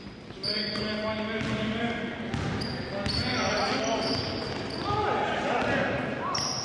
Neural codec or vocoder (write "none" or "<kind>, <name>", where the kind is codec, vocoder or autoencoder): none